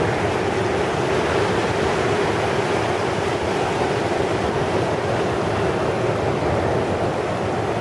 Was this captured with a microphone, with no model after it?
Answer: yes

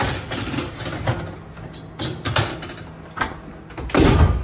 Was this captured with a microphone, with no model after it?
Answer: yes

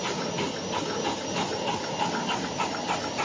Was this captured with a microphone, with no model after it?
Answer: yes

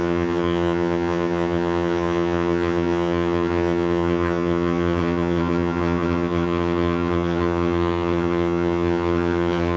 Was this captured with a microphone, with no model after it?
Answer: no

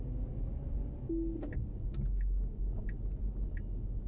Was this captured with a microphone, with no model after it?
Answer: yes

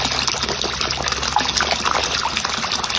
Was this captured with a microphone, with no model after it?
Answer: yes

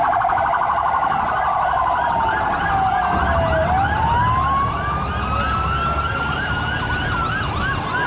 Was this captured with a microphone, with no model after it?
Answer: yes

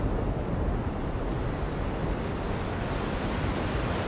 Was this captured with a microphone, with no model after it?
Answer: yes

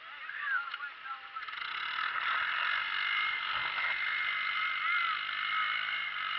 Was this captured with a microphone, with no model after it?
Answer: yes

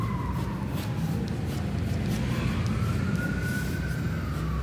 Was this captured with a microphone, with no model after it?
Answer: yes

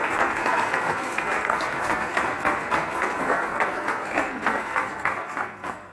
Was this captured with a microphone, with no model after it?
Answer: no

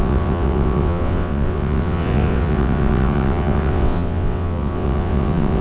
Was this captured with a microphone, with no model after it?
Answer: no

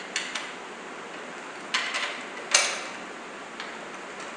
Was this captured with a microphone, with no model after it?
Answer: yes